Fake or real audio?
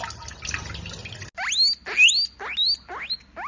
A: real